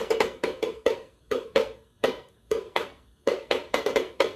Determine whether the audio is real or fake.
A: fake